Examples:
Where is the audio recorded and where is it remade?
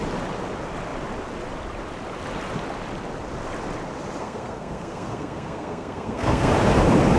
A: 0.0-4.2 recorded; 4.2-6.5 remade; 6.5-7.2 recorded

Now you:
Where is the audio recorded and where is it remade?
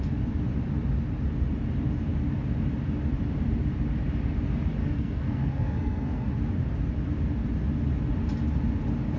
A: 0.0-4.8 recorded; 4.8-6.3 remade; 6.3-9.2 recorded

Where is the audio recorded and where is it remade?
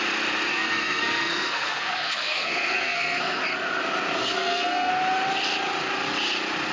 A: 0.0-0.5 recorded; 0.5-3.4 remade; 3.4-4.2 recorded; 4.2-4.9 remade; 4.9-6.7 recorded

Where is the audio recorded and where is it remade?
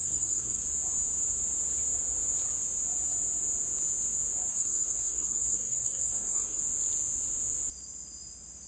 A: 0.0-0.6 remade; 0.6-4.5 recorded; 4.5-6.6 remade; 6.6-8.7 recorded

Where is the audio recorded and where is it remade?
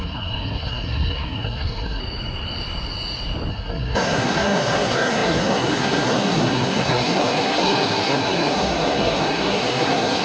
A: 0.0-2.0 remade; 2.0-3.5 recorded; 3.5-10.2 remade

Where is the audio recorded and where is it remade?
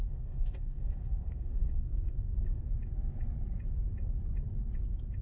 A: 0.0-2.6 remade; 2.6-5.2 recorded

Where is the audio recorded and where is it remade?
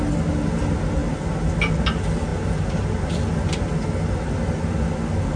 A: 0.0-5.4 recorded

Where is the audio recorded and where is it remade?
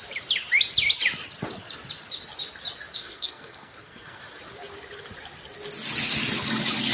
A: 0.0-2.9 recorded; 2.9-4.2 remade; 4.2-6.9 recorded